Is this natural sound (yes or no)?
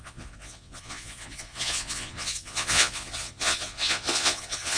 no